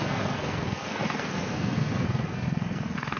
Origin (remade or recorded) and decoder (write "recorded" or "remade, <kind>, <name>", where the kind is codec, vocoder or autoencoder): remade, codec, SNAC